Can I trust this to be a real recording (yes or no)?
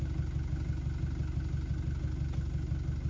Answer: yes